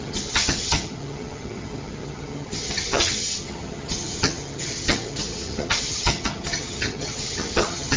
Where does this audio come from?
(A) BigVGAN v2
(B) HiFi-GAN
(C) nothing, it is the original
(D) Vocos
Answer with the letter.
B